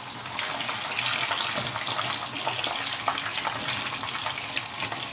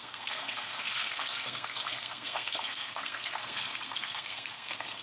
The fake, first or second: second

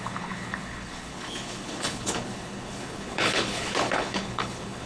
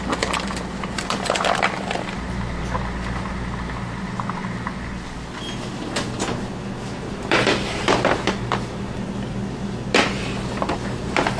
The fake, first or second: first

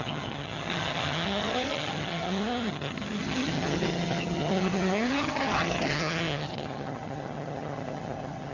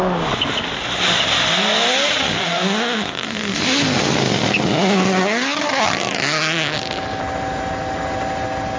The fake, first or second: first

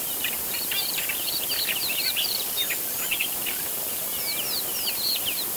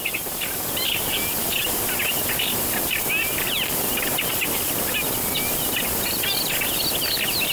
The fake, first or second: first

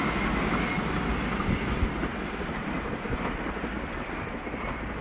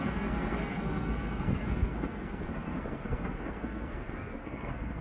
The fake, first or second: second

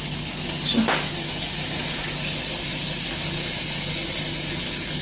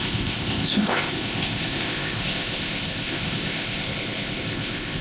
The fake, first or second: second